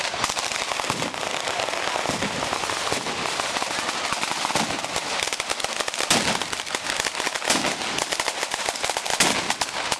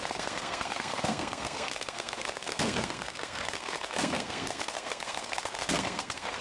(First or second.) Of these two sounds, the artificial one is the second